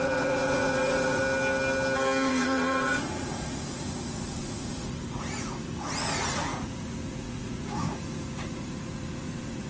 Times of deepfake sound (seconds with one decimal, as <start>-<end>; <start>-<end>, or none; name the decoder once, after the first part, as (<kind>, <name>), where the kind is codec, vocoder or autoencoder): 0.0-1.2 (vocoder, Vocos); 2.3-9.7